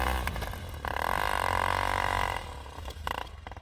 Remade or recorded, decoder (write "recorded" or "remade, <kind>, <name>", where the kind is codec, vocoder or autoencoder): recorded